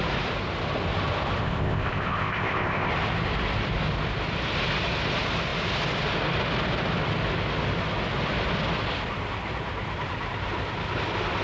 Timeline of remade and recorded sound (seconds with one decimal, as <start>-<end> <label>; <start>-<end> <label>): 0.0-1.4 recorded; 1.4-2.9 remade; 2.9-11.4 recorded